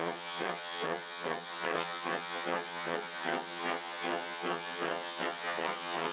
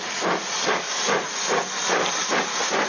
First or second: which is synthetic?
first